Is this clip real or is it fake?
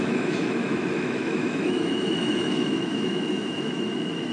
fake